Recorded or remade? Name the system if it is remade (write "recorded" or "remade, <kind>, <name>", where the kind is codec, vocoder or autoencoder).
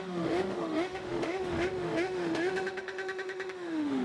remade, autoencoder, DAC-VAE